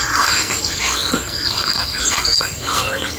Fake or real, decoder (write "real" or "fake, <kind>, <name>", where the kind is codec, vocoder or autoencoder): fake, codec, SNAC